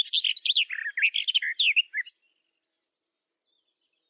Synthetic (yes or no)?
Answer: no